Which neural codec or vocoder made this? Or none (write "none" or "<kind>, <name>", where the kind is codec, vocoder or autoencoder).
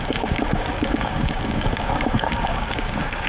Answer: codec, DAC